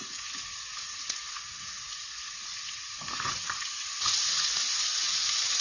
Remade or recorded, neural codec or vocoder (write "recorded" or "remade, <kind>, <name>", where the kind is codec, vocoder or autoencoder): remade, vocoder, Vocos